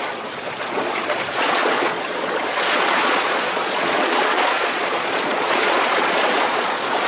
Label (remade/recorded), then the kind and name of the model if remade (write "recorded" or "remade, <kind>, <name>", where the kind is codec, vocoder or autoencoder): remade, vocoder, Vocos